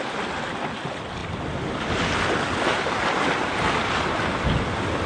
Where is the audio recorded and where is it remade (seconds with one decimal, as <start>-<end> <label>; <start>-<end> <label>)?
0.0-5.1 recorded